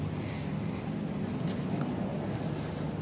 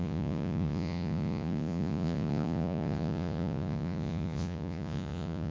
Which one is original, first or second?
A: first